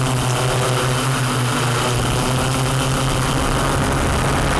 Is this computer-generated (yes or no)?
no